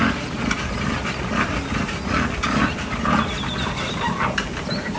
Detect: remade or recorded recorded